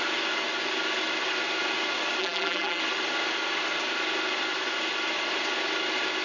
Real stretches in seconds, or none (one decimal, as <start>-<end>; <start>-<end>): 0.0-2.2; 2.8-6.2